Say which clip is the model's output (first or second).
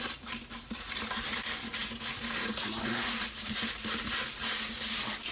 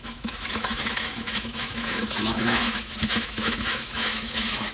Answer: second